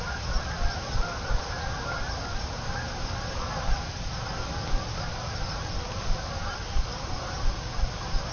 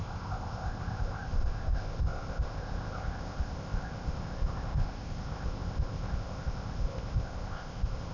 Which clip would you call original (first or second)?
first